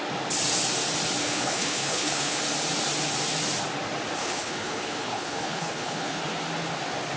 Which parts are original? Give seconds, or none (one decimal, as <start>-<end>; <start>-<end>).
0.0-1.2; 2.4-4.2; 6.2-7.2